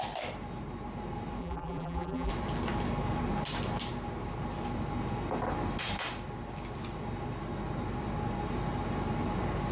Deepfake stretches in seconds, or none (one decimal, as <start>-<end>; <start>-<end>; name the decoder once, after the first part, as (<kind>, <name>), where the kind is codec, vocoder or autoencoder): 1.4-2.3 (vocoder, BigVGAN v2)